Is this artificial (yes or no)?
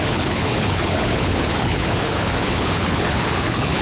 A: yes